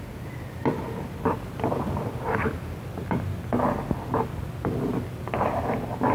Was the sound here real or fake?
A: real